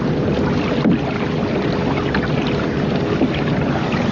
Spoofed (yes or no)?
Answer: no